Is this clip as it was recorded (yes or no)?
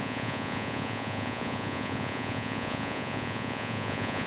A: no